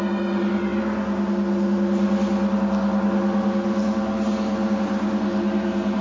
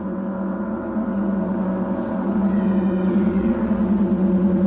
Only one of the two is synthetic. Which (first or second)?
second